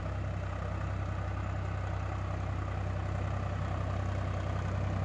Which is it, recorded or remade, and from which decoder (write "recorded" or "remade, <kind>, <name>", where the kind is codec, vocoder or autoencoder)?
recorded